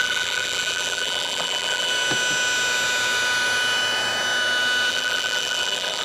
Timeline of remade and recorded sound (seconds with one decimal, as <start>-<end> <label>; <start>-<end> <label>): 0.0-1.9 remade; 1.9-4.9 recorded; 4.9-6.0 remade